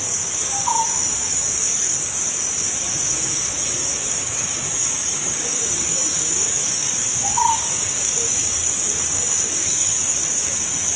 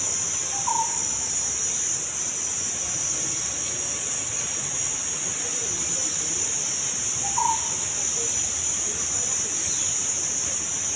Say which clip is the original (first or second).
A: second